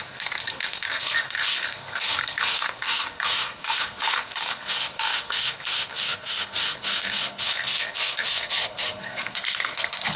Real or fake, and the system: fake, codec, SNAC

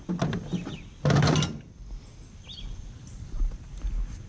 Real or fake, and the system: real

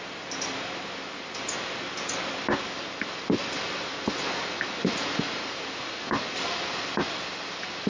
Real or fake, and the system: real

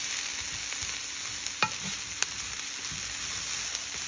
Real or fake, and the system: real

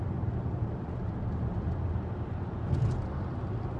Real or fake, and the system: real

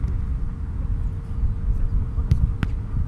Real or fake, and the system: real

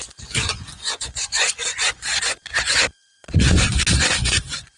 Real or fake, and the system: fake, vocoder, Vocos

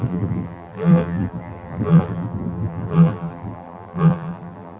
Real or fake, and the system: fake, vocoder, BigVGAN v2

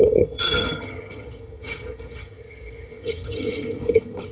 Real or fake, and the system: fake, vocoder, HiFi-GAN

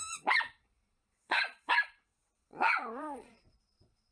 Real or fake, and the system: fake, vocoder, Vocos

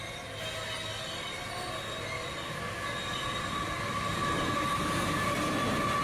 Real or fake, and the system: real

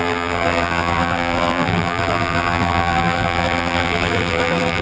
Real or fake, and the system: fake, vocoder, BigVGAN v2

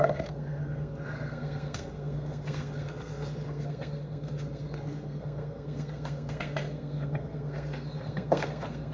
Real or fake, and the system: fake, codec, SNAC